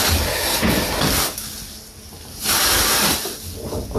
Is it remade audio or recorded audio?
recorded